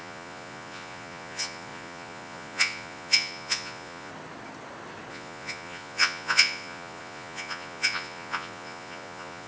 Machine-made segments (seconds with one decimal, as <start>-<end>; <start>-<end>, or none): 0.0-4.1; 5.1-9.5